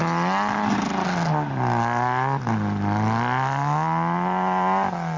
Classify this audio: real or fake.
real